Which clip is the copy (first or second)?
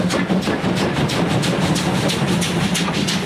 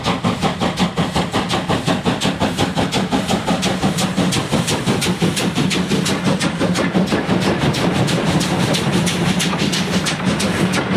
second